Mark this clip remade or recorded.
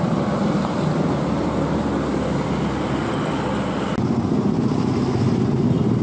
recorded